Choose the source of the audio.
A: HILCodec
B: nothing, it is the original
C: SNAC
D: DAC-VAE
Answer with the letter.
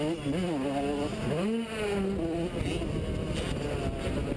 B